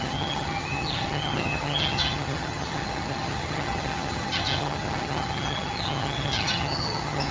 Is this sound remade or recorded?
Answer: remade